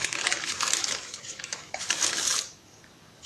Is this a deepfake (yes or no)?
yes